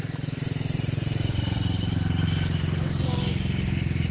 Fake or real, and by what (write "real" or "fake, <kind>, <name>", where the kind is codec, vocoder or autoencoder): real